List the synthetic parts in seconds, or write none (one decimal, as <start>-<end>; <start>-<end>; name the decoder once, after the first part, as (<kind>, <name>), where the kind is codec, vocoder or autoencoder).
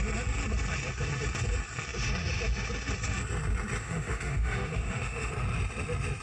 3.8-5.3 (autoencoder, DAC-VAE)